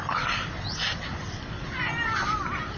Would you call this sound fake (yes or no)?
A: no